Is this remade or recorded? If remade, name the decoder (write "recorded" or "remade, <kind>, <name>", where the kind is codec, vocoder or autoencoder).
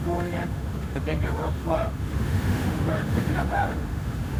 remade, autoencoder, DAC-VAE